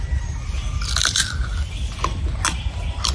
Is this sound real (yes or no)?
yes